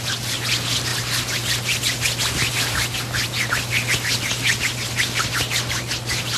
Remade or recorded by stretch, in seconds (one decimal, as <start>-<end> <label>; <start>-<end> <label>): 0.0-6.4 recorded